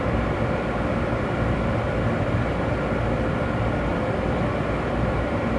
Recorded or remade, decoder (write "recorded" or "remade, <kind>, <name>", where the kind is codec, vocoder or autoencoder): remade, vocoder, BigVGAN v2